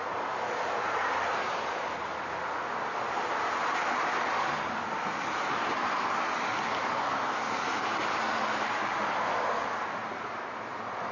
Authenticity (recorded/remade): recorded